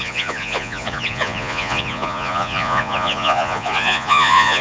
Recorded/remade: remade